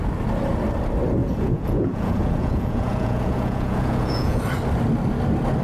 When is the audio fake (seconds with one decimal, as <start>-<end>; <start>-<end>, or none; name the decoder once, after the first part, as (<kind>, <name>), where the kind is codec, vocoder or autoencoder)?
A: 1.2-4.4 (vocoder, Vocos)